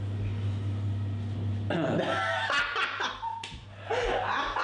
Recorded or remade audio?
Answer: recorded